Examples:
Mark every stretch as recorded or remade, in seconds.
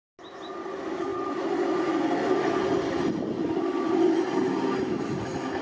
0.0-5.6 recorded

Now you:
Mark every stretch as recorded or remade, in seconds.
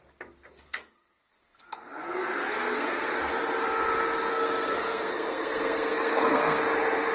0.0-0.4 recorded; 0.4-3.3 remade; 3.3-4.3 recorded; 4.3-6.6 remade; 6.6-7.1 recorded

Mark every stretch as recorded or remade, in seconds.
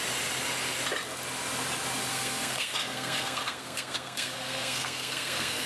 0.0-2.1 recorded; 2.1-5.7 remade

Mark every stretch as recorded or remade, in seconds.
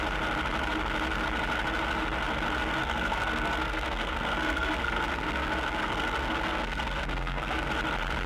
0.0-2.8 recorded; 2.8-7.7 remade; 7.7-8.3 recorded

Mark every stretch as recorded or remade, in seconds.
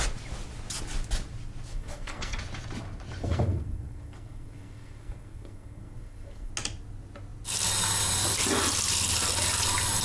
0.0-1.7 recorded; 1.7-2.4 remade; 2.4-3.2 recorded; 3.2-6.5 remade; 6.5-10.0 recorded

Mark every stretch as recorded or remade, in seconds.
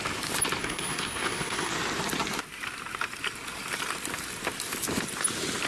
0.0-0.6 recorded; 0.6-1.7 remade; 1.7-5.7 recorded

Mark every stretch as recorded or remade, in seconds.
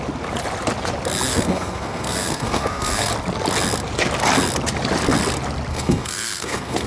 0.0-1.3 recorded; 1.3-3.1 remade; 3.1-5.7 recorded; 5.7-6.9 remade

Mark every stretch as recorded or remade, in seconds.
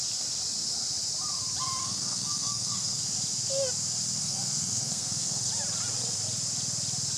0.0-1.8 recorded; 1.8-3.0 remade; 3.0-4.2 recorded; 4.2-5.5 remade; 5.5-7.2 recorded